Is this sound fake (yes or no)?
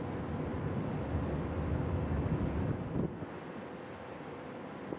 no